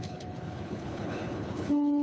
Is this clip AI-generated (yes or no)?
yes